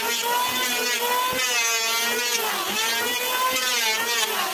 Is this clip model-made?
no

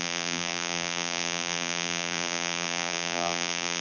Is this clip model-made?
yes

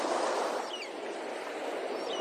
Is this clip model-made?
yes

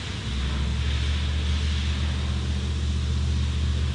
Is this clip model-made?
no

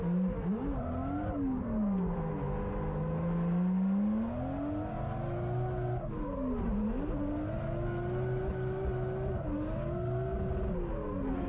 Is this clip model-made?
no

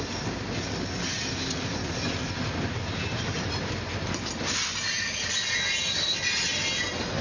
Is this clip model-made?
no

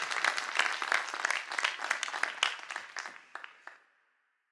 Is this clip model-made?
no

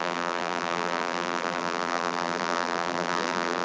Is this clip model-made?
yes